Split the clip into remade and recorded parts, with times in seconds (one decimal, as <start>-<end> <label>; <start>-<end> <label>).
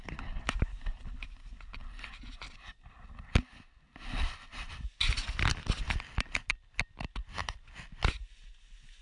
0.0-9.0 recorded